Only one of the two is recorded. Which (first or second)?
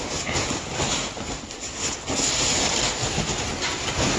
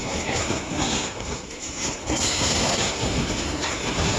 first